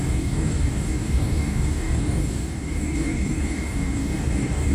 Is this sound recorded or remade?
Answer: remade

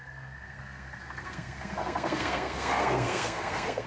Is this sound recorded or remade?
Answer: remade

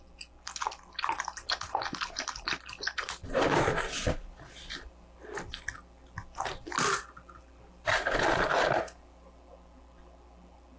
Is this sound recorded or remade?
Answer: recorded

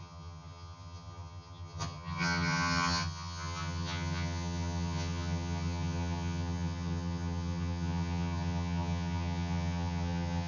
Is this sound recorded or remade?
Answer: remade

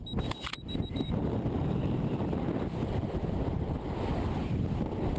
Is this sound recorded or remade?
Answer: recorded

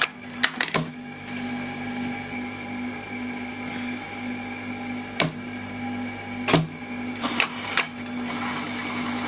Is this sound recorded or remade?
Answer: recorded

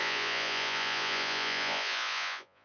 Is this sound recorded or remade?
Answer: remade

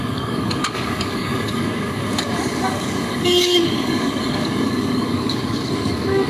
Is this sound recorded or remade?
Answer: remade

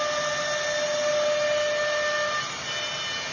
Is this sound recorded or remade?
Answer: recorded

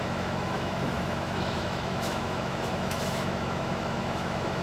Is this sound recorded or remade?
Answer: remade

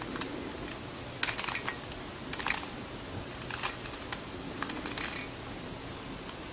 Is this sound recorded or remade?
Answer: recorded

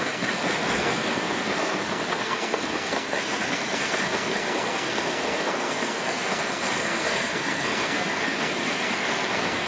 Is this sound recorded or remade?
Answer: remade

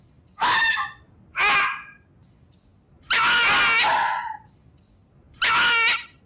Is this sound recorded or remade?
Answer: recorded